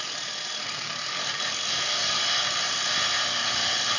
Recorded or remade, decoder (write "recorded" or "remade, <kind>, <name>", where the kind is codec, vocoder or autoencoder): recorded